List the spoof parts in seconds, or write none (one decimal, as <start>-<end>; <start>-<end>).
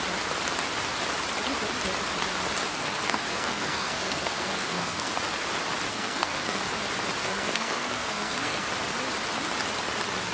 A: 2.7-5.1; 5.9-6.6; 7.2-8.7